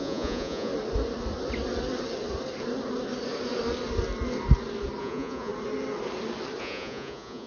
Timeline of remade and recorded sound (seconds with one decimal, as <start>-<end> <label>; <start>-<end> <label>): 0.0-0.7 remade; 0.7-5.0 recorded; 5.0-5.5 remade; 5.5-6.6 recorded; 6.6-7.5 remade